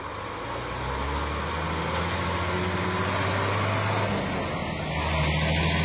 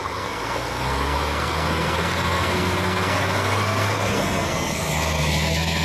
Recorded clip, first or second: first